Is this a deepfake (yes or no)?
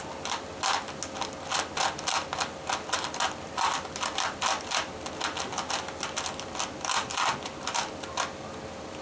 no